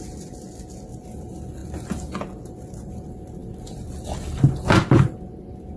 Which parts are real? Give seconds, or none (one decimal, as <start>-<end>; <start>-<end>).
0.0-3.4; 3.9-5.8